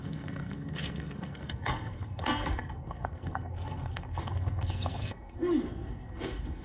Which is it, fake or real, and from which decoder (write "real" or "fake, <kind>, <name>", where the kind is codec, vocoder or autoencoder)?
fake, codec, SNAC